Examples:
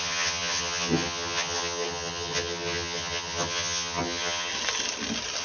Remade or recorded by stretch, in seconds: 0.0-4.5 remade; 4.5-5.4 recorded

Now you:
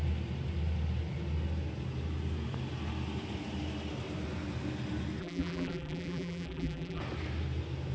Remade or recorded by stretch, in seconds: 0.0-5.2 recorded; 5.2-7.0 remade; 7.0-7.9 recorded

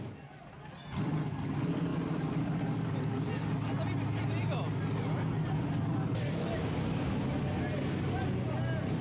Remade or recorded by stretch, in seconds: 0.0-1.9 recorded; 1.9-3.3 remade; 3.3-9.0 recorded

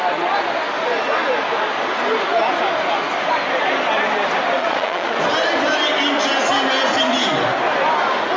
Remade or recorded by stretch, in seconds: 0.0-4.6 recorded; 4.6-5.2 remade; 5.2-8.4 recorded

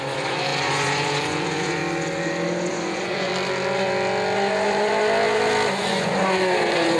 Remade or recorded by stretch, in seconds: 0.0-1.8 remade; 1.8-2.7 recorded; 2.7-3.3 remade; 3.3-5.8 recorded; 5.8-7.0 remade

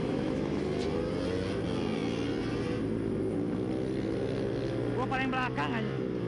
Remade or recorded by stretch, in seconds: 0.0-0.6 remade; 0.6-6.3 recorded

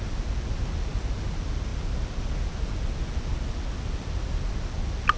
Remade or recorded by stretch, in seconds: 0.0-5.2 recorded

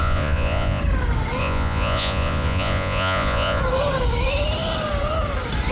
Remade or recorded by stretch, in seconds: 0.0-0.8 remade; 0.8-1.4 recorded; 1.4-3.6 remade; 3.6-5.7 recorded